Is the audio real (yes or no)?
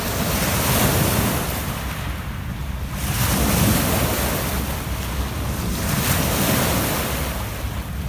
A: yes